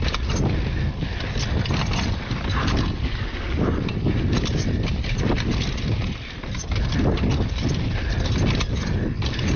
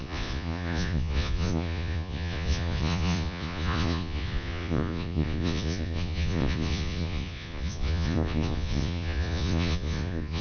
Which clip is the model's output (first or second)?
second